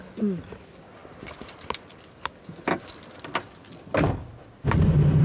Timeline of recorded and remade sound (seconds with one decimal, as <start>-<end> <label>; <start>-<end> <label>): 0.0-5.2 recorded